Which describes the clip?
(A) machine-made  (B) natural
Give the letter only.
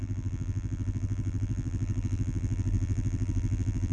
A